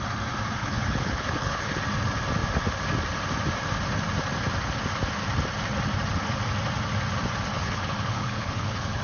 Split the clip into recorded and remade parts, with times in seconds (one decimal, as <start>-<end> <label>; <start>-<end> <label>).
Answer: 0.0-0.6 recorded; 0.6-1.8 remade; 1.8-7.5 recorded; 7.5-9.0 remade